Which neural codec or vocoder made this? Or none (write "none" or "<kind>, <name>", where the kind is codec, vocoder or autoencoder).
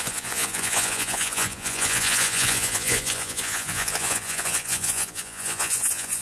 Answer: vocoder, Vocos